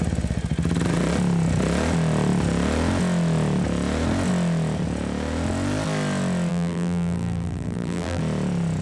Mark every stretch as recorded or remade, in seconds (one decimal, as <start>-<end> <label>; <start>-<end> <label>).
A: 0.0-6.5 recorded; 6.5-8.2 remade; 8.2-8.8 recorded